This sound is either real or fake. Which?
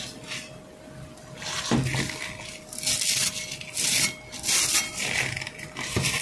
real